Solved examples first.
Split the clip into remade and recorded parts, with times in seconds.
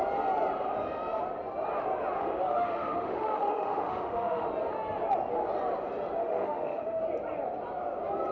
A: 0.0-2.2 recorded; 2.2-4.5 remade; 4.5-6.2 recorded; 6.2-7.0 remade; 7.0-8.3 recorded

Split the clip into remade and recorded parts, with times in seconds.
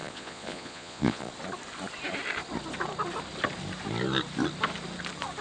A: 0.0-1.3 remade; 1.3-5.4 recorded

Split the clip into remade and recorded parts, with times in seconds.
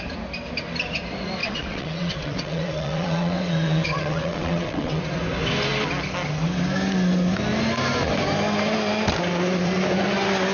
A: 0.0-1.4 recorded; 1.4-5.0 remade; 5.0-10.5 recorded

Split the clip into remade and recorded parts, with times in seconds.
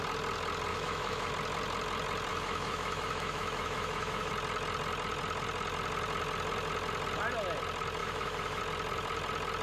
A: 0.0-0.7 recorded; 0.7-1.3 remade; 1.3-2.3 recorded; 2.3-4.3 remade; 4.3-8.0 recorded; 8.0-8.6 remade; 8.6-9.6 recorded